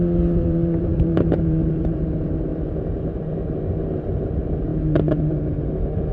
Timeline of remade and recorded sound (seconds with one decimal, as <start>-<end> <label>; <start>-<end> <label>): 0.0-6.1 remade